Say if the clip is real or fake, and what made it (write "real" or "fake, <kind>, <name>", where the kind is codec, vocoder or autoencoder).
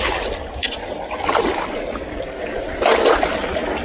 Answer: real